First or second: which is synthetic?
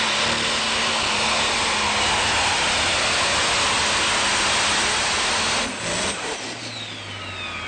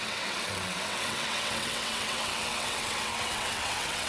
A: second